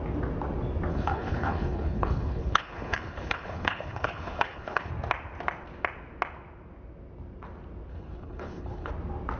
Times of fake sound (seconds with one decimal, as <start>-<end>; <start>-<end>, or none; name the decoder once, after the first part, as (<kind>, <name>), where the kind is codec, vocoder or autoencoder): 0.9-4.9 (codec, HILCodec); 7.9-8.9